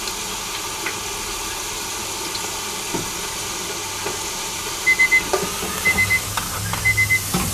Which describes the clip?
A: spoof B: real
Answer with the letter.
B